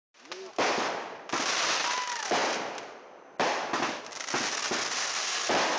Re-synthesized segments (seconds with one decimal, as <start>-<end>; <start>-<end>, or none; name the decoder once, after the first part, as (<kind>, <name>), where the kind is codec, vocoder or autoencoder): none